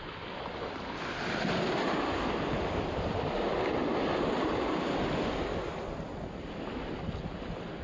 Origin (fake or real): real